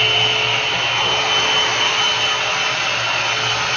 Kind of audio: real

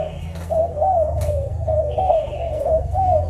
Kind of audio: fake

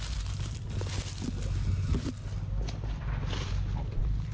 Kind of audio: real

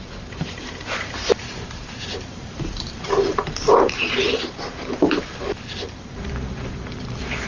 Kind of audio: fake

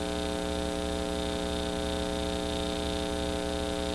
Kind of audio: real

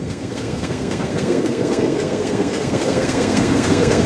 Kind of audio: fake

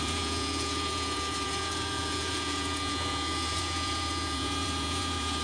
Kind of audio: fake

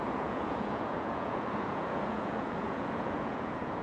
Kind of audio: fake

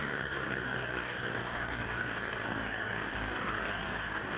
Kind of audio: fake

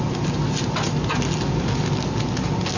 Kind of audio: real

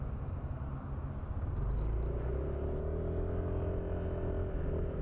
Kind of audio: real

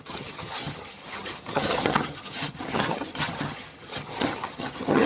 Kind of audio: fake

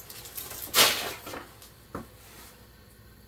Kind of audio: real